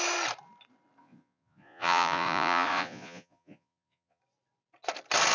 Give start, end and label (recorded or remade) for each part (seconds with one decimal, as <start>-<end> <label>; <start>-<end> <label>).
0.0-1.0 recorded; 1.0-4.2 remade; 4.2-5.3 recorded